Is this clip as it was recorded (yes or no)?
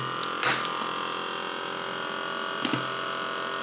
yes